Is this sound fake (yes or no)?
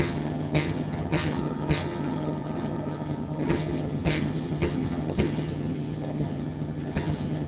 yes